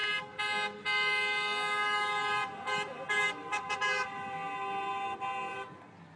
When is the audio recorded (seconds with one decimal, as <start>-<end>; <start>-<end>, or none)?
0.0-6.2